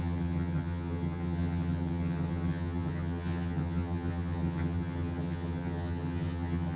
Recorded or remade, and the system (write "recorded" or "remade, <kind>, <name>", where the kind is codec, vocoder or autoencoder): remade, vocoder, HiFi-GAN